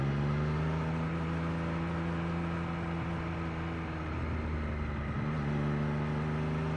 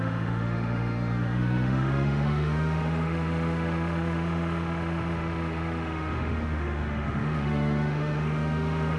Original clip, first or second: first